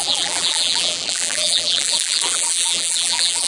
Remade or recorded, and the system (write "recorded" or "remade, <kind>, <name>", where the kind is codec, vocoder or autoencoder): remade, vocoder, BigVGAN v2